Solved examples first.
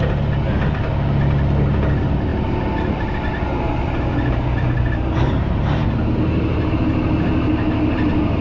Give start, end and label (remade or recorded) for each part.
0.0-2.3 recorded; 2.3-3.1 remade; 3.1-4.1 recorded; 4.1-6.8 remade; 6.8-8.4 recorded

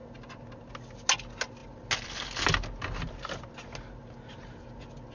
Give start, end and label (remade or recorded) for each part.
0.0-5.1 recorded

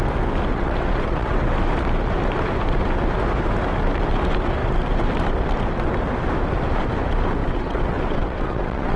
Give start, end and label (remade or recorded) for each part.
0.0-0.5 recorded; 0.5-1.5 remade; 1.5-7.4 recorded; 7.4-9.0 remade

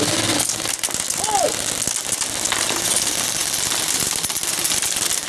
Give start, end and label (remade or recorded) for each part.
0.0-5.3 recorded